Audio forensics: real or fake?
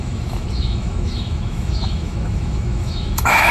fake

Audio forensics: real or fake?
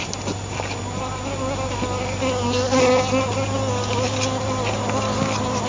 real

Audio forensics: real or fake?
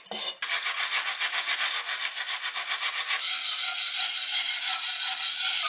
real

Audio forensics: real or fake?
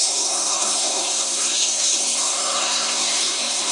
fake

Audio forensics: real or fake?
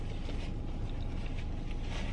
real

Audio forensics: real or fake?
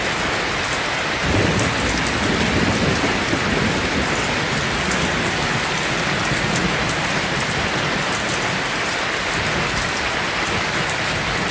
real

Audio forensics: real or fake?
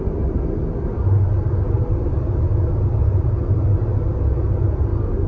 real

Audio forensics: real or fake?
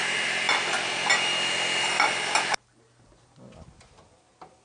real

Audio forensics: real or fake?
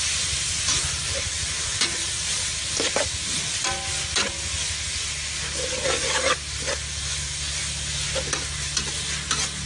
real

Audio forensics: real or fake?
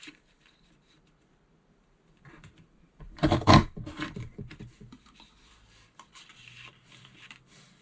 fake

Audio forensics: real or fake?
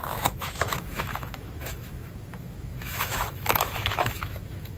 fake